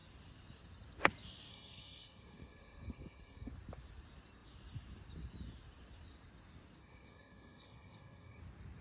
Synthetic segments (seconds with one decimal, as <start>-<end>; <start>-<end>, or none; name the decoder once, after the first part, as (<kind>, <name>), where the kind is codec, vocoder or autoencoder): 1.5-3.5 (codec, SNAC); 6.8-8.4